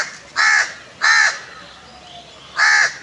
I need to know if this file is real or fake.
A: real